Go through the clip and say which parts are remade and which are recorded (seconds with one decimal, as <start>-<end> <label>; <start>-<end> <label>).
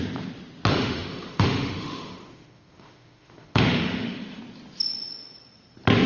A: 0.0-0.7 recorded; 0.7-4.4 remade; 4.4-6.1 recorded